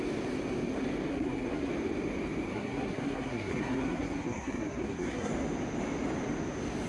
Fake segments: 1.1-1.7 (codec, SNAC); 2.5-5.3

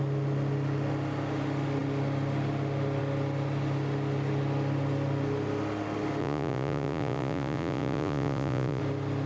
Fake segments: 6.2-8.8 (vocoder, Vocos)

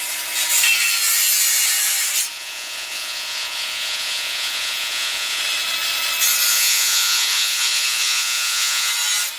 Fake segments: 2.3-5.4 (vocoder, Vocos); 6.5-8.9

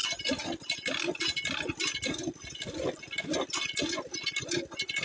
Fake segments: none

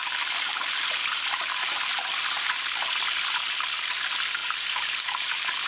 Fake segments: 4.4-5.3 (vocoder, BigVGAN v2)